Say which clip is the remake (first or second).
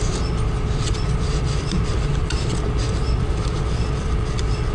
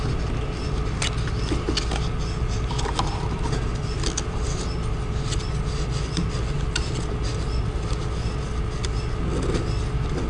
first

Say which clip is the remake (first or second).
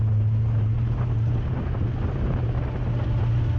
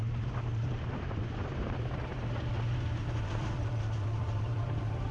second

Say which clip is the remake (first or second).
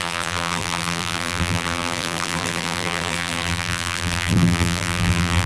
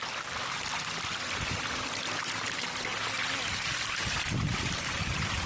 first